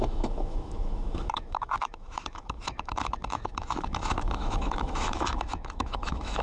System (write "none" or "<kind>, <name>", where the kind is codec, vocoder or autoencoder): autoencoder, DAC-VAE